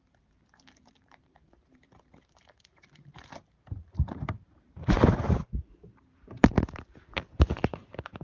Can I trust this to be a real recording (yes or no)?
no